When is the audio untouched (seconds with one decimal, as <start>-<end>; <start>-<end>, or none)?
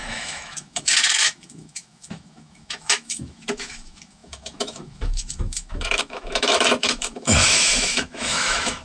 none